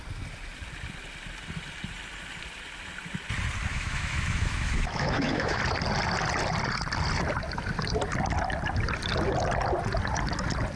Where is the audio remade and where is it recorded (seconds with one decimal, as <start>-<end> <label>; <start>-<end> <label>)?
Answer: 0.0-3.7 recorded; 3.7-5.6 remade; 5.6-10.8 recorded